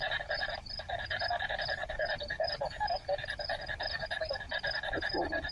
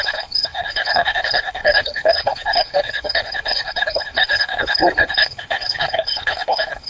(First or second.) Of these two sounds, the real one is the first